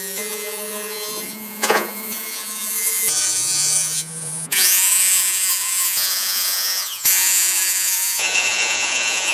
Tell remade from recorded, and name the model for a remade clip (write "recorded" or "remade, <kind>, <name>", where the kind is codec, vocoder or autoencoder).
remade, vocoder, Vocos